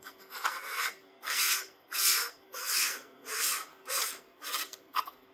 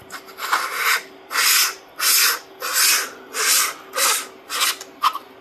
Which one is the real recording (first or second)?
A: second